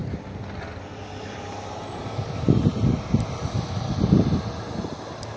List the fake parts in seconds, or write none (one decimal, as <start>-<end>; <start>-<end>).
none